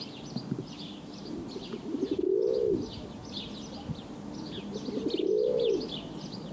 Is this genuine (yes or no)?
yes